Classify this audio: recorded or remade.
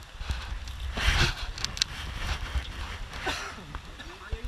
recorded